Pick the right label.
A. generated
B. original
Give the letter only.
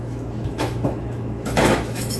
A